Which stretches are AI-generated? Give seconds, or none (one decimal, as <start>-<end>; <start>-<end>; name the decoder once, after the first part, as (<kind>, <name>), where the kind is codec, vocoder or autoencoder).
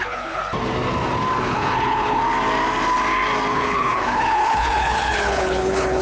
0.0-0.4 (codec, HILCodec); 1.5-2.2; 3.5-6.0